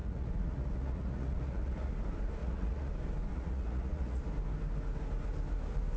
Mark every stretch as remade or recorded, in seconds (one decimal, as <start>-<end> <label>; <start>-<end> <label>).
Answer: 0.0-1.9 remade; 1.9-2.4 recorded; 2.4-2.9 remade; 2.9-3.3 recorded; 3.3-4.2 remade; 4.2-6.0 recorded